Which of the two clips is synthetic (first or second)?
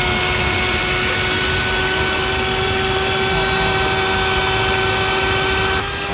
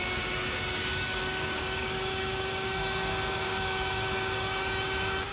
second